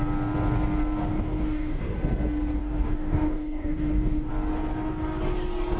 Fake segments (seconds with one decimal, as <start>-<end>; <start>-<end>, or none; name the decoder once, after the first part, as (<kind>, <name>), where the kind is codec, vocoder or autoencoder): 1.0-1.8 (codec, DAC); 2.6-4.3